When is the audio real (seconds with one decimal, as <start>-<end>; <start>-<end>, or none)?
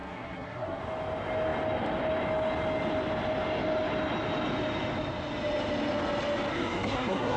0.8-6.5